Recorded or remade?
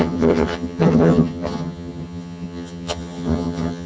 remade